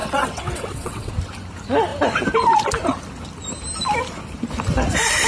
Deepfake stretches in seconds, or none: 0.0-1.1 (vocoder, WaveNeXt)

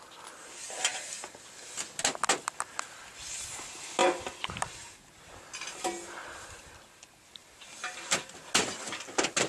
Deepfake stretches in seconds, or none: none

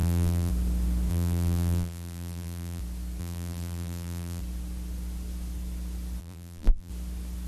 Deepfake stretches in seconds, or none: 0.0-0.5 (vocoder, BigVGAN v2); 1.1-2.8; 3.2-4.4; 6.2-6.9

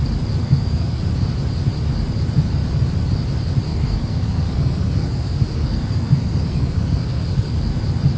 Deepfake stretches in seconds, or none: 0.4-1.0 (codec, SNAC); 3.7-7.6

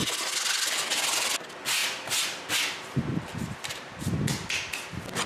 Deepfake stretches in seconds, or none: none